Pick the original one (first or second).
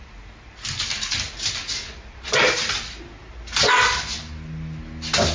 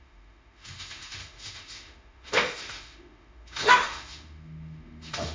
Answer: first